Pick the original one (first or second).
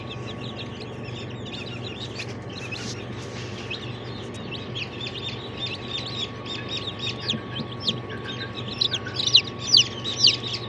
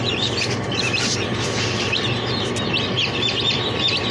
first